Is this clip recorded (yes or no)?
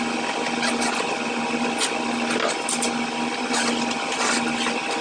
yes